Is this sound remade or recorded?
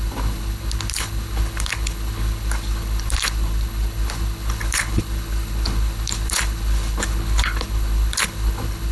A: remade